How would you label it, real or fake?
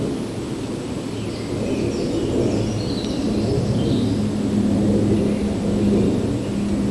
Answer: real